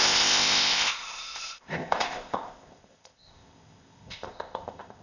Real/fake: fake